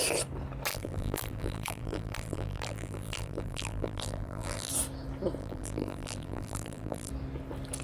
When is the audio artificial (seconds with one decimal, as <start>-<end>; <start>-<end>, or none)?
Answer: 0.7-4.7; 5.4-7.1